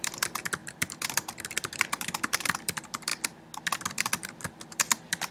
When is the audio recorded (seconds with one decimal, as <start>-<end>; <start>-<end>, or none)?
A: 3.1-3.9